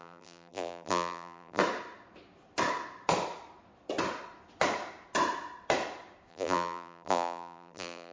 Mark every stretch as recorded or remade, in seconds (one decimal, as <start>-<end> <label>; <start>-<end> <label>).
0.0-1.6 remade; 1.6-6.3 recorded; 6.3-8.1 remade

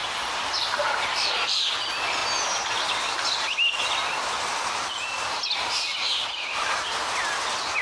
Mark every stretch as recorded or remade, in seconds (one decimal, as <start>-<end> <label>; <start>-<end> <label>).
0.0-2.2 remade; 2.2-6.1 recorded; 6.1-7.8 remade

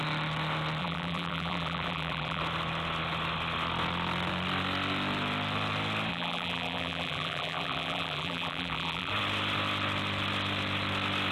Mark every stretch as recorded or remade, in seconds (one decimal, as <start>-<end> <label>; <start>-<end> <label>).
0.0-0.8 recorded; 0.8-2.4 remade; 2.4-6.1 recorded; 6.1-9.1 remade; 9.1-11.3 recorded

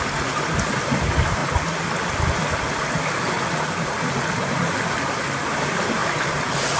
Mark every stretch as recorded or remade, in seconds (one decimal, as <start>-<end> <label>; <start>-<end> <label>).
0.0-1.4 remade; 1.4-5.5 recorded; 5.5-6.0 remade; 6.0-6.8 recorded

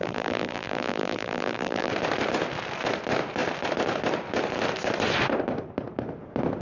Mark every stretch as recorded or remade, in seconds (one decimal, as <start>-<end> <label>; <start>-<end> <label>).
0.0-1.9 remade; 1.9-6.6 recorded